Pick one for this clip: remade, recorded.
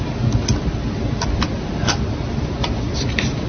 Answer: recorded